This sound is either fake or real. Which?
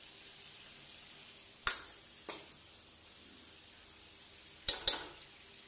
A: real